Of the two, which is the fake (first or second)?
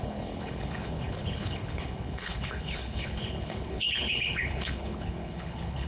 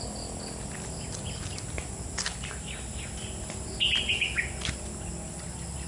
first